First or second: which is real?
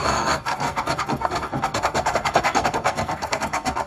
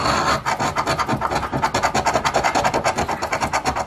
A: second